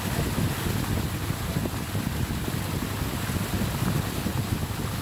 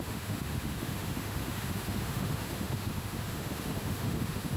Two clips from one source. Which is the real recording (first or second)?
first